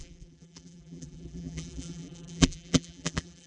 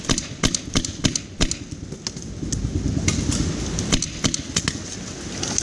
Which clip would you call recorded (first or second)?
second